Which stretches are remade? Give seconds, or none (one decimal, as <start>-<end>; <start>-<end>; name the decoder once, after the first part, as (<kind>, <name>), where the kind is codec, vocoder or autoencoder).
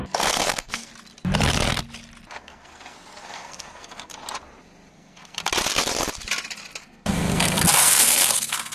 0.0-0.9 (codec, SNAC); 2.3-4.1; 4.9-5.4; 6.8-8.7